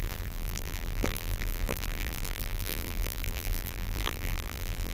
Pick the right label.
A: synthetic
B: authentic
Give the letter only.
A